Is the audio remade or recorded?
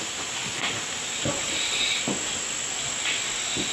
recorded